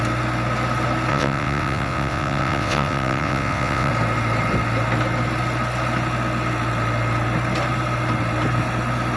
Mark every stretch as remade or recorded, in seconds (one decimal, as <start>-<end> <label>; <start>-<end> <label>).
0.0-1.1 recorded; 1.1-3.9 remade; 3.9-9.2 recorded